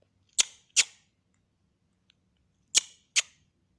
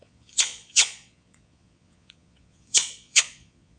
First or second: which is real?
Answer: first